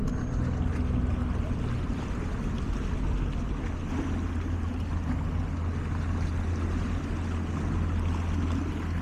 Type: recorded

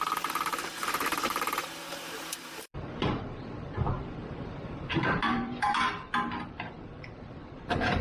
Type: remade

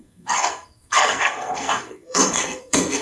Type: remade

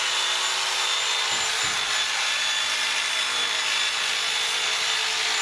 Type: recorded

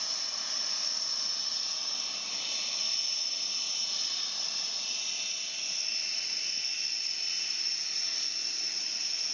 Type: recorded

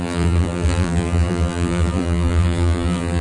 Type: remade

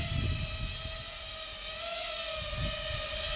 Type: recorded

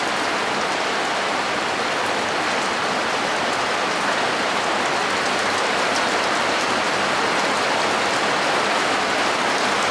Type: recorded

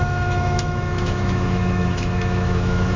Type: remade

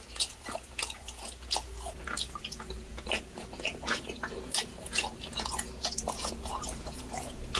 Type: remade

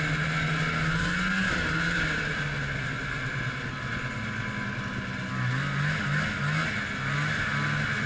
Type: recorded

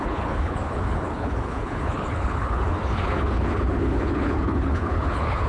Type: remade